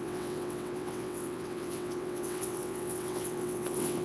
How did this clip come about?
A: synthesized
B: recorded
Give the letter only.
A